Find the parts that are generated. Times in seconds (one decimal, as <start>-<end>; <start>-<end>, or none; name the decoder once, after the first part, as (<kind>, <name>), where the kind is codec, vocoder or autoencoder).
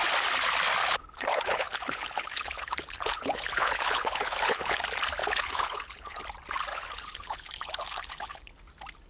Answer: 0.8-4.8 (codec, HILCodec); 5.2-6.2; 6.7-8.5